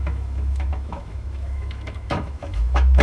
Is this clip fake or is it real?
fake